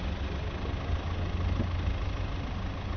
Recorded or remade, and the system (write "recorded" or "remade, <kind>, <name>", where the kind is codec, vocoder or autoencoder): recorded